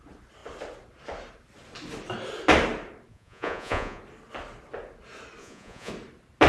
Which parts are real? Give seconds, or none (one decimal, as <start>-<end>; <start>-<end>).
0.0-3.1; 4.0-5.4; 5.9-6.5